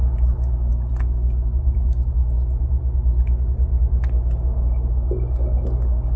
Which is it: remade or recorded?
recorded